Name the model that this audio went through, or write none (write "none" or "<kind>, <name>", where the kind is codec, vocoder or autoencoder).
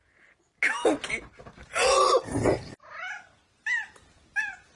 none